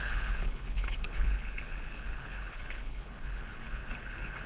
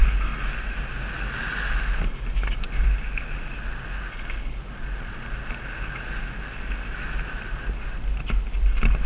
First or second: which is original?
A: second